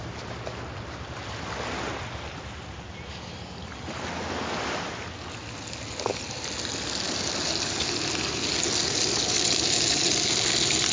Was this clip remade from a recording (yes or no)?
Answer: no